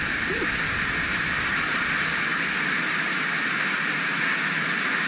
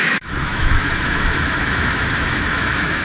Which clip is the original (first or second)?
first